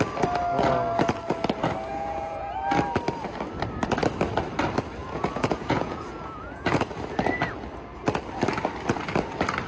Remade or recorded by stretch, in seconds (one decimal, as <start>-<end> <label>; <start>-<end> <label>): 0.0-1.9 recorded; 1.9-2.5 remade; 2.5-5.0 recorded; 5.0-6.9 remade; 6.9-9.7 recorded

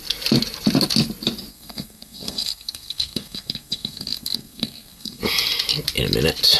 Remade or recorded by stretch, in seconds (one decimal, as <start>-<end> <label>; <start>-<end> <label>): 0.0-1.5 recorded; 1.5-5.2 remade; 5.2-6.6 recorded

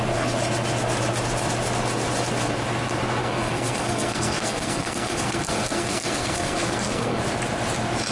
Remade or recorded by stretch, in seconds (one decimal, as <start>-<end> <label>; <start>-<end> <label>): 0.0-3.2 recorded; 3.2-7.2 remade; 7.2-8.1 recorded

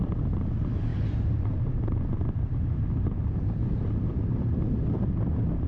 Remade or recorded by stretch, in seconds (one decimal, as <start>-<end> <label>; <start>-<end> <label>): 0.0-0.9 recorded; 0.9-4.3 remade; 4.3-5.7 recorded

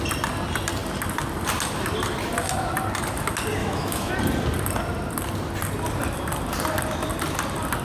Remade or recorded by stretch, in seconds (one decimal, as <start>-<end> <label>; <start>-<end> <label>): 0.0-3.6 recorded; 3.6-4.1 remade; 4.1-7.8 recorded

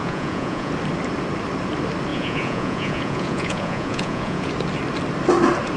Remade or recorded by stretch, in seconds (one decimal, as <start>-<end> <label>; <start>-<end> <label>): 0.0-0.7 remade; 0.7-2.1 recorded; 2.1-4.5 remade; 4.5-5.8 recorded

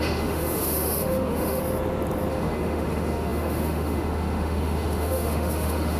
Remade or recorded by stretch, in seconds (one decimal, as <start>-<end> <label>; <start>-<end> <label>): 0.0-1.6 remade; 1.6-2.3 recorded; 2.3-6.0 remade

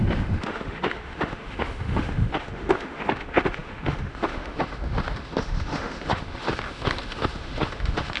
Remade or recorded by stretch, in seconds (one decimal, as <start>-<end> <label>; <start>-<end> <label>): 0.0-8.2 remade